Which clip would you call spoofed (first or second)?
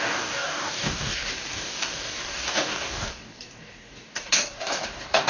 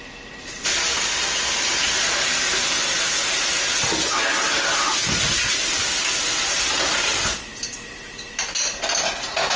first